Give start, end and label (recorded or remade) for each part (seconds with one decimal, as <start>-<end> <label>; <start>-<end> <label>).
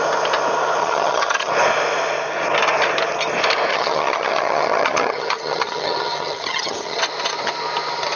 0.0-0.8 recorded; 0.8-1.5 remade; 1.5-3.7 recorded; 3.7-7.0 remade; 7.0-8.2 recorded